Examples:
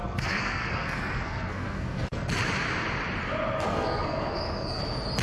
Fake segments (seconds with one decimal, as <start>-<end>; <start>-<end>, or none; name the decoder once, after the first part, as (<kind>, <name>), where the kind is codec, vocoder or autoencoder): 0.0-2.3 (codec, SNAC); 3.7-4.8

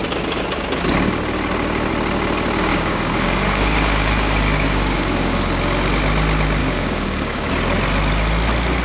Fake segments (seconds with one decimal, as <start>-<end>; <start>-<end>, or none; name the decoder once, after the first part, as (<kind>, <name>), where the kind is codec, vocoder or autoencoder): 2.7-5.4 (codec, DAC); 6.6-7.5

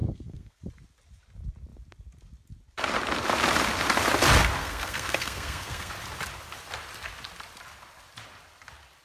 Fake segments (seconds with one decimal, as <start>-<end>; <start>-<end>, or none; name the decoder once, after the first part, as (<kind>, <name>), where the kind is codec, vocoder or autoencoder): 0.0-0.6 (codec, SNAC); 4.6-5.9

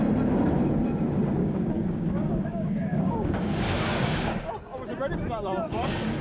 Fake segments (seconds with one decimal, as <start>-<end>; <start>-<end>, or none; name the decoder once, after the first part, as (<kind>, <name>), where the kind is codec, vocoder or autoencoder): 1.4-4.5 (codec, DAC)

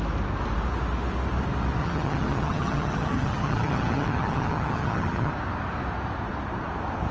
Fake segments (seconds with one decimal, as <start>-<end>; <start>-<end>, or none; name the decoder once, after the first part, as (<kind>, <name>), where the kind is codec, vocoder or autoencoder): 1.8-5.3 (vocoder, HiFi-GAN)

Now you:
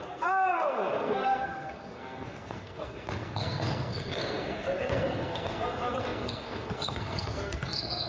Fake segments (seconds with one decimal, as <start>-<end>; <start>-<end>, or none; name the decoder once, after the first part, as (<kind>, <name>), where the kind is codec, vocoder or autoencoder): 0.0-8.1 (codec, SNAC)